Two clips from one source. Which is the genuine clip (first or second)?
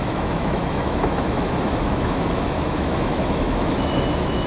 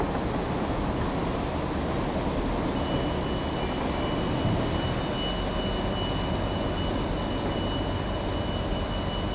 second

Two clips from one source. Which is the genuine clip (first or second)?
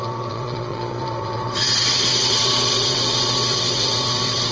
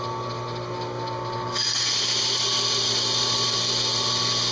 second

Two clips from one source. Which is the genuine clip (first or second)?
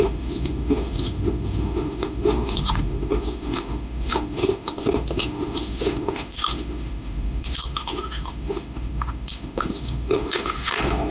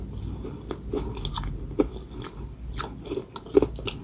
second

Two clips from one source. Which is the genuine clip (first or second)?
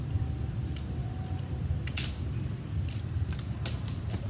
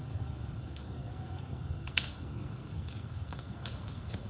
first